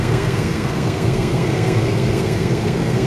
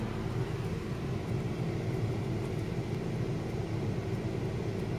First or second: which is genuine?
second